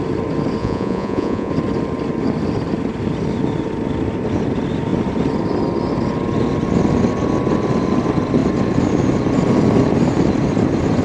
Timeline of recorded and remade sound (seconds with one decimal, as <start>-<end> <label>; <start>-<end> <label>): 0.0-0.6 recorded; 0.6-1.5 remade; 1.5-11.0 recorded